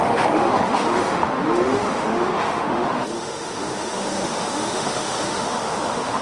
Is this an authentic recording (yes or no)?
no